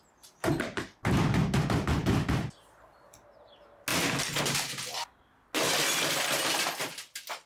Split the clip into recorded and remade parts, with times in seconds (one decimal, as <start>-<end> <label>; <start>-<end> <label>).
0.0-7.5 recorded